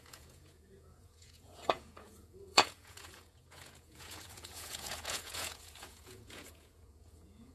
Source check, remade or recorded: remade